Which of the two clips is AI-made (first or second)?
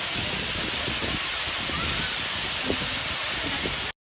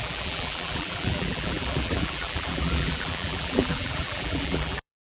second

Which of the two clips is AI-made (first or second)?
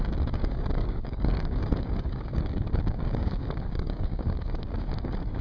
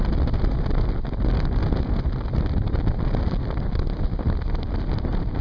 first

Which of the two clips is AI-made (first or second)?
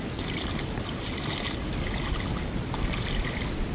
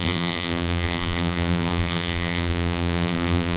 second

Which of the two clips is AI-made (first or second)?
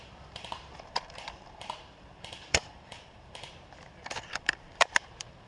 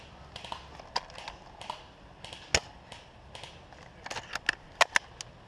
first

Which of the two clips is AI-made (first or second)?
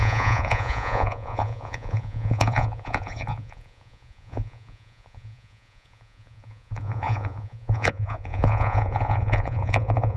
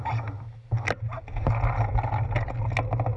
first